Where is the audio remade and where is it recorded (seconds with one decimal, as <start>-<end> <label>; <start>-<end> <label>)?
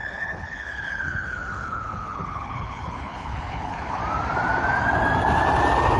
0.0-4.0 remade; 4.0-6.0 recorded